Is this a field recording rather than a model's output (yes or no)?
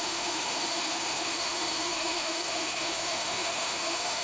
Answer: no